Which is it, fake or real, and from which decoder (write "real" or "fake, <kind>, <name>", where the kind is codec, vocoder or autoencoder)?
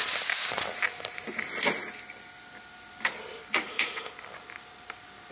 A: real